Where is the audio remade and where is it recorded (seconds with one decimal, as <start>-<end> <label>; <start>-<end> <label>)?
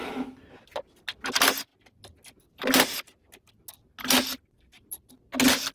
0.0-0.6 remade; 0.6-5.7 recorded